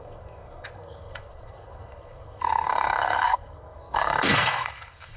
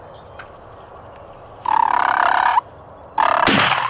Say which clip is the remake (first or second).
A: first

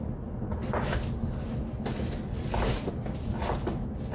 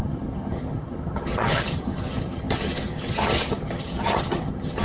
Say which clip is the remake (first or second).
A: second